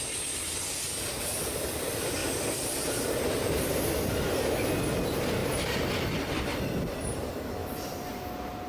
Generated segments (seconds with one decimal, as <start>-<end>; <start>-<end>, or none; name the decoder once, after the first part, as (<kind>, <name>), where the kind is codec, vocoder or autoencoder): 2.2-4.2 (vocoder, BigVGAN v2); 7.6-8.2